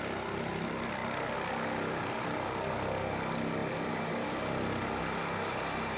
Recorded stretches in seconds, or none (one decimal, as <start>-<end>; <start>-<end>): 0.0-6.0